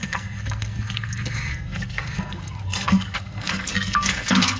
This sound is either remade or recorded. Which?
remade